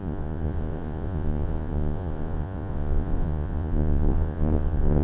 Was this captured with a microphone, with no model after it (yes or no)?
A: no